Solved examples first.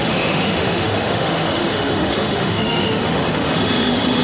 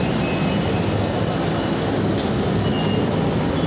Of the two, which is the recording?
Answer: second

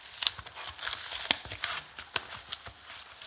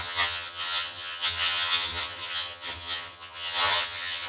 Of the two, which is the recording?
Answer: first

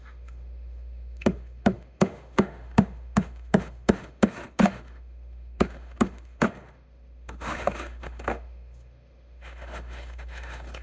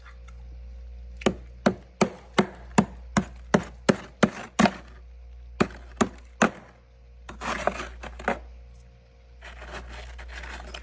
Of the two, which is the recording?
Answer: second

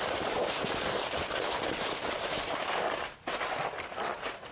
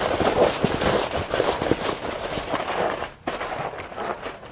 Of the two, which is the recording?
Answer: second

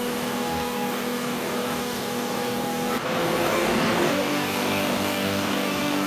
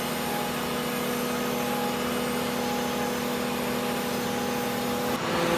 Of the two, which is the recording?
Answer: second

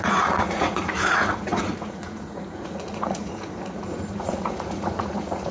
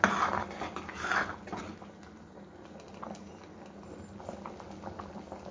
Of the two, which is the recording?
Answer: second